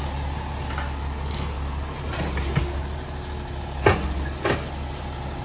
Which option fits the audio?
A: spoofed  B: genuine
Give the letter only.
B